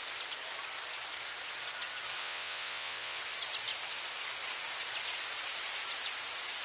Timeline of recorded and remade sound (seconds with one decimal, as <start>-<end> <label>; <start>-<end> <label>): 0.0-2.2 recorded; 2.2-3.2 remade; 3.2-6.6 recorded